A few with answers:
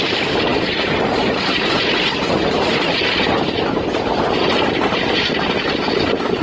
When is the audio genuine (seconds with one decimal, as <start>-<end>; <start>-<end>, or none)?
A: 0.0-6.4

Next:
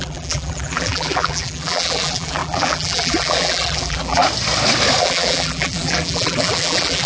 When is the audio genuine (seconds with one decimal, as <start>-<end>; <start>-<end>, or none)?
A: 4.2-5.0

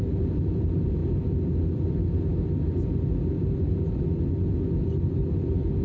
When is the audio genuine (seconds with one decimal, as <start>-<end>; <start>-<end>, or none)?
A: 0.0-5.8

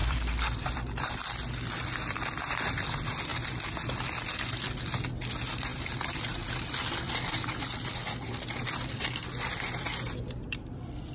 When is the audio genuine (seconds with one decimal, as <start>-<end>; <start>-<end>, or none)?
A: 1.1-5.7; 9.0-11.1